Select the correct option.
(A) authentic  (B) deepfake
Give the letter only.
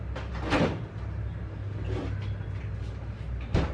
A